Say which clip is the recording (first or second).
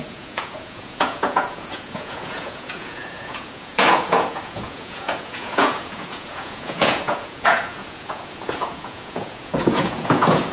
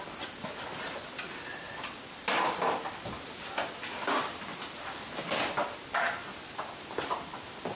second